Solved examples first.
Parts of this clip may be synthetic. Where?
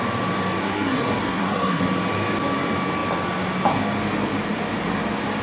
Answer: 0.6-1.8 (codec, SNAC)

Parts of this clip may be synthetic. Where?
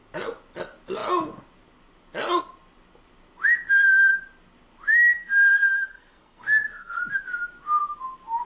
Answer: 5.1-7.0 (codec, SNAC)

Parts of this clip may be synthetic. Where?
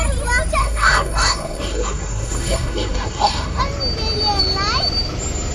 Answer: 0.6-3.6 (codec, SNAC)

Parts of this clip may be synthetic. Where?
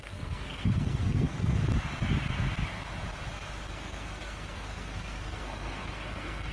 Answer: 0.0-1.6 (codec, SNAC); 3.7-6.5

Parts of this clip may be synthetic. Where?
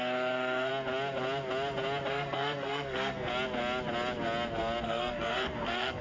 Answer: 0.0-0.7 (codec, SNAC); 2.1-3.3; 4.8-6.0